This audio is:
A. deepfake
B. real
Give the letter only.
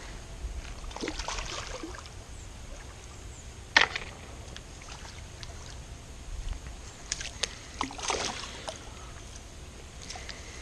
B